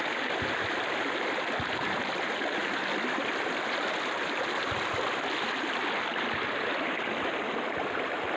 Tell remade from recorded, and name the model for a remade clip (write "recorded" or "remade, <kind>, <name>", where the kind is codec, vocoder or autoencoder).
recorded